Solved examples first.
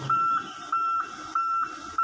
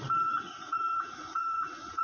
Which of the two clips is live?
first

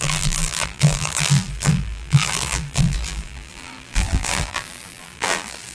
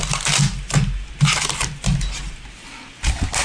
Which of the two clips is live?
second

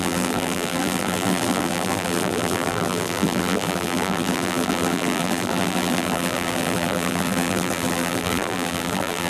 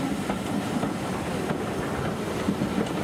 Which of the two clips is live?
second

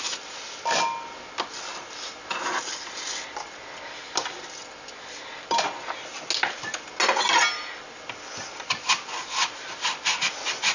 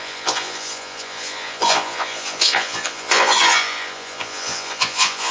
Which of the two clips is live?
first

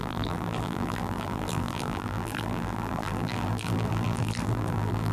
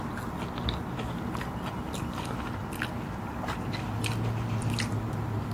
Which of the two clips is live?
second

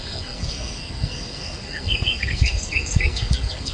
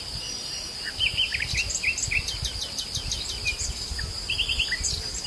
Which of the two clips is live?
second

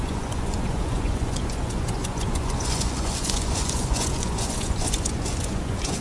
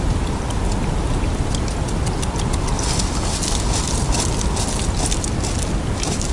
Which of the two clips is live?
second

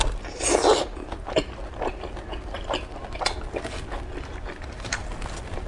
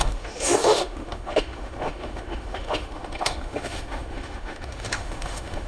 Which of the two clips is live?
first